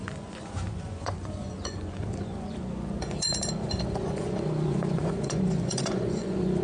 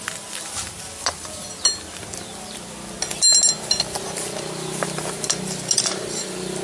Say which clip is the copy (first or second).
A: first